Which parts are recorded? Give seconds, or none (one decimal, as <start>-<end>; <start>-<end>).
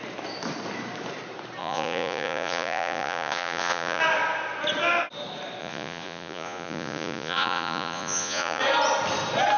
0.0-1.6; 4.0-5.6; 8.6-9.6